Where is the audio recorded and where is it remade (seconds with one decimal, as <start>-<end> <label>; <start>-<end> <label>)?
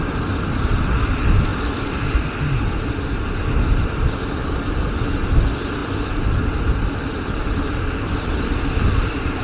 0.0-9.4 recorded